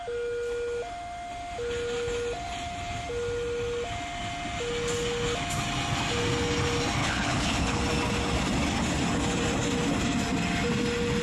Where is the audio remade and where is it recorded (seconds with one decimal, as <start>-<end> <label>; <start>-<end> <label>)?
0.0-7.0 recorded; 7.0-7.8 remade; 7.8-11.2 recorded